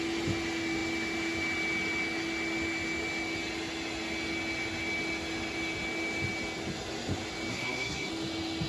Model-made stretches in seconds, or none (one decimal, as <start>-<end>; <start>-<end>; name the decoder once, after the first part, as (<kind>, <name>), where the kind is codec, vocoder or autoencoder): 7.5-8.1 (codec, SNAC)